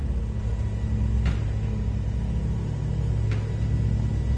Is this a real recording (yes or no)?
yes